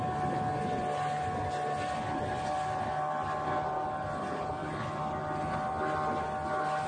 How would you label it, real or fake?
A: real